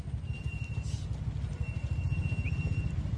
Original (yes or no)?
yes